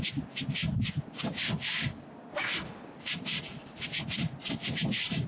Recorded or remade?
remade